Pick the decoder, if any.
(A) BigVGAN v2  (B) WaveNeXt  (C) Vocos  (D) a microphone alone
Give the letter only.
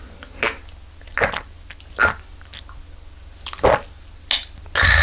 D